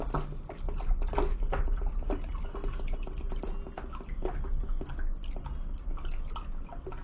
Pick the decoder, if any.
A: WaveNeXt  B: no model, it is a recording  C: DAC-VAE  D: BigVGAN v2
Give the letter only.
B